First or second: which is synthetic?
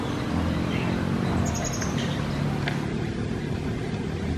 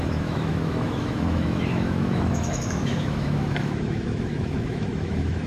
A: second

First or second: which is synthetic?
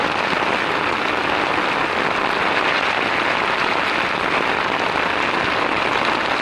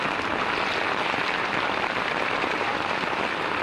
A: second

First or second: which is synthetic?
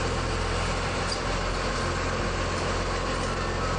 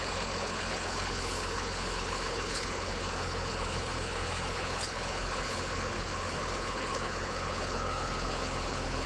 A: second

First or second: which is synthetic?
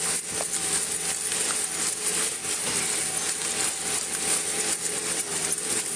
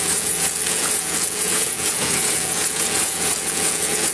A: second